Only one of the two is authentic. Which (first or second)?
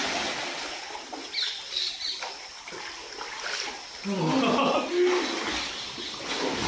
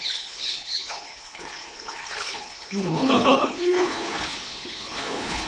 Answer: first